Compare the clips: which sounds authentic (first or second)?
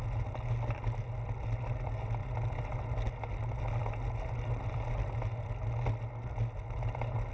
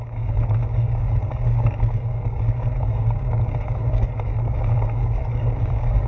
first